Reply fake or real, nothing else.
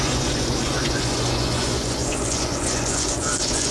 fake